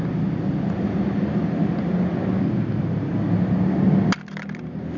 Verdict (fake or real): real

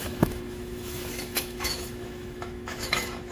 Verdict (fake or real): fake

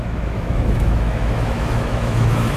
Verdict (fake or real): fake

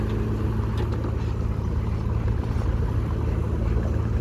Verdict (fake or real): real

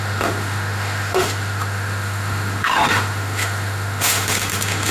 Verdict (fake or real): fake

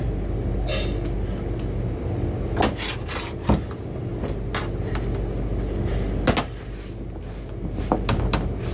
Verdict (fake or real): real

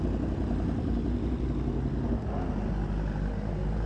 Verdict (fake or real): real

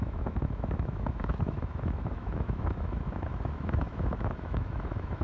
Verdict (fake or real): fake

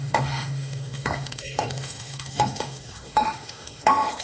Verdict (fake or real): fake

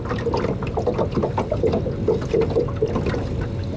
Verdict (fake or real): real